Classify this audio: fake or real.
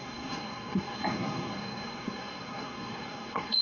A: fake